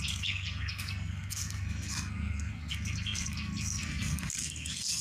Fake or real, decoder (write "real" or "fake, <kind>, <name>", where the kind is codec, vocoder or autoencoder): fake, codec, SNAC